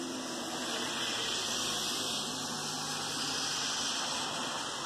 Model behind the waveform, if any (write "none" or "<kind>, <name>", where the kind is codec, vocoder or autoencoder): none